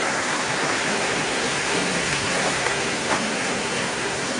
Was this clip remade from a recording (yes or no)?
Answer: yes